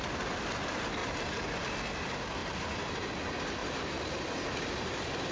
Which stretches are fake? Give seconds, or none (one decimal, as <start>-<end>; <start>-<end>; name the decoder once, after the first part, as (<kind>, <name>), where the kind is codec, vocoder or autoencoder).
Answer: 1.0-1.6 (vocoder, BigVGAN v2); 2.4-3.1; 3.6-5.3